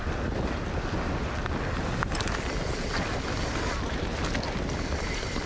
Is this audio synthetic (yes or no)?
no